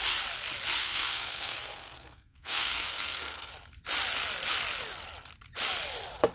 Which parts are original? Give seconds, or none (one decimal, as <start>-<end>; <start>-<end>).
0.0-0.8; 3.5-6.3